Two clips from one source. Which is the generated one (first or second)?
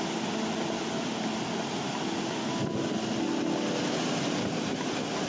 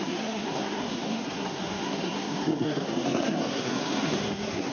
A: second